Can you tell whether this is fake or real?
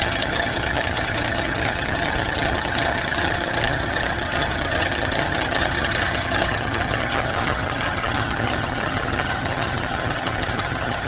fake